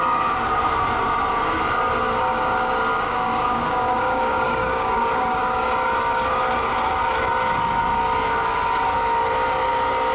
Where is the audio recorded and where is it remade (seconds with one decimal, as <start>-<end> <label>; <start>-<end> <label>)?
0.0-2.9 recorded; 2.9-5.7 remade; 5.7-10.1 recorded